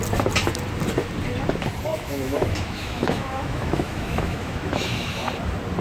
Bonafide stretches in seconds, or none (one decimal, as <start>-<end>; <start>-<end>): 0.0-1.9; 5.2-5.8